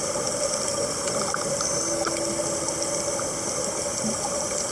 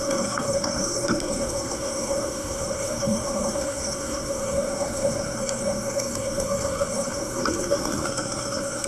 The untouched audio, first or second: first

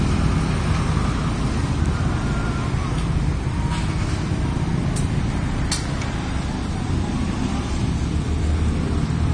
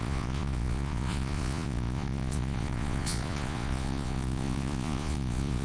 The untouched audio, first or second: first